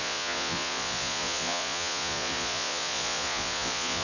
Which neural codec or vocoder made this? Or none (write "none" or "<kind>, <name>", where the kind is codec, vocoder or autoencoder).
vocoder, Vocos